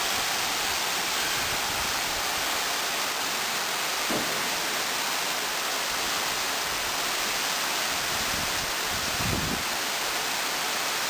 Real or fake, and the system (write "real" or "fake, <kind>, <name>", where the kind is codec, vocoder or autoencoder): real